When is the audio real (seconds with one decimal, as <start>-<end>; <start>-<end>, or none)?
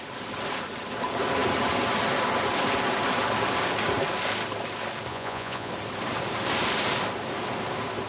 0.0-5.1; 5.7-8.1